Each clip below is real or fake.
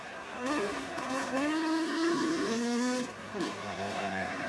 fake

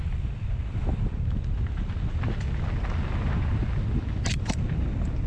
real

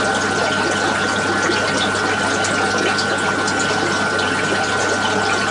real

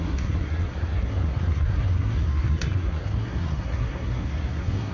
fake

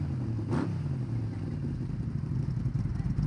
real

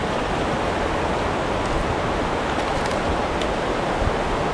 real